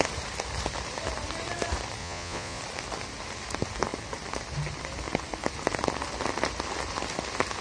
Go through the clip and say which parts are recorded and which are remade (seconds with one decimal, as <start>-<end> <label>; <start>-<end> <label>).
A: 0.0-2.0 recorded; 2.0-2.6 remade; 2.6-7.6 recorded